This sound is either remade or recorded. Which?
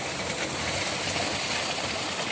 recorded